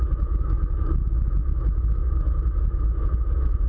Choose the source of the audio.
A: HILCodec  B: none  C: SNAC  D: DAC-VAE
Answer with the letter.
D